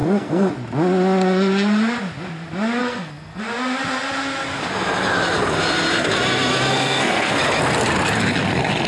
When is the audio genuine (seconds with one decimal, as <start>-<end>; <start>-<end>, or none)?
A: 0.5-2.8; 3.4-6.7; 7.4-8.9